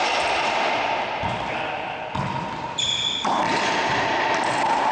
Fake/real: real